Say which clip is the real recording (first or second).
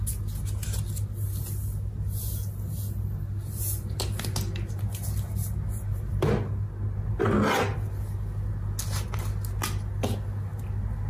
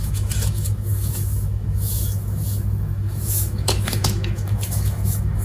first